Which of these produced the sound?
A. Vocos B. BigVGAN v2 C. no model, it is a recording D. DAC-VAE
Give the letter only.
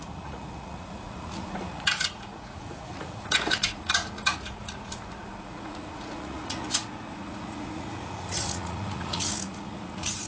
A